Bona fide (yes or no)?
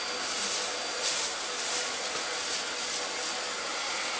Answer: yes